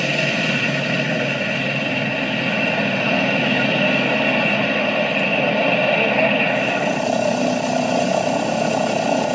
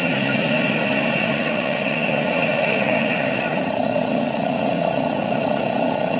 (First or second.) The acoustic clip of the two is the first